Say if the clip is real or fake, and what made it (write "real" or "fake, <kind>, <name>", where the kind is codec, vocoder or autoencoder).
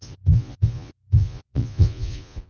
fake, vocoder, Vocos